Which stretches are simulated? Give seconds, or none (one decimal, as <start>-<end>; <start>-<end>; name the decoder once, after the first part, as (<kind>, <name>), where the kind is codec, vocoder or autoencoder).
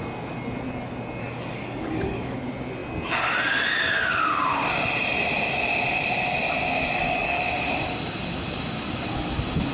1.2-2.4 (codec, DAC); 6.9-7.4